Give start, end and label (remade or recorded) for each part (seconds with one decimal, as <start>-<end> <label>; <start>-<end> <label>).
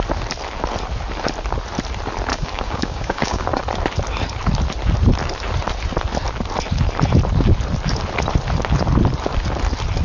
0.0-2.3 recorded; 2.3-3.4 remade; 3.4-10.0 recorded